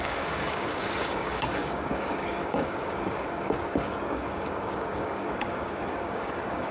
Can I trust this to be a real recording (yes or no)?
no